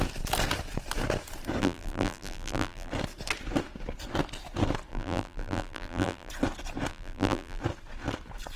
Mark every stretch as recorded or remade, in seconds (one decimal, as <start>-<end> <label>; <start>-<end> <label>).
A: 0.0-1.6 recorded; 1.6-2.9 remade; 2.9-4.9 recorded; 4.9-6.3 remade; 6.3-6.9 recorded; 6.9-7.6 remade; 7.6-8.6 recorded